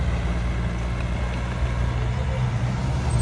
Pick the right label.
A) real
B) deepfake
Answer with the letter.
A